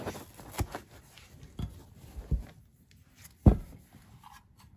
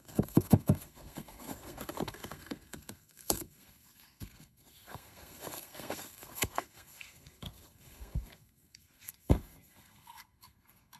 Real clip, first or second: first